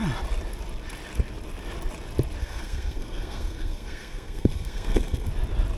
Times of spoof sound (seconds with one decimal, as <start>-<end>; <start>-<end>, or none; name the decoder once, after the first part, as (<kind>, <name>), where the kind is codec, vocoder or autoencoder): 2.4-5.3 (codec, SNAC)